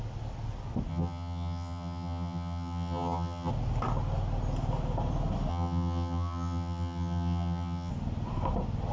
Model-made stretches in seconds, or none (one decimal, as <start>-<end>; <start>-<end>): 0.9-3.5; 5.5-7.9